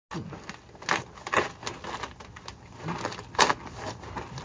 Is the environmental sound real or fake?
real